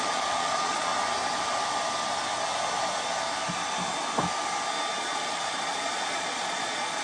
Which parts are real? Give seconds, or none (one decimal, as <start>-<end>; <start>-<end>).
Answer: 0.9-5.0